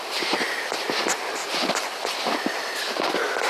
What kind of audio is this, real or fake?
real